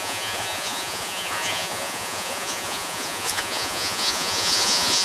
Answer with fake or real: fake